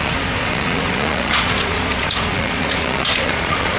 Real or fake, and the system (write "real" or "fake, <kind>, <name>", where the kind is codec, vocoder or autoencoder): fake, vocoder, Vocos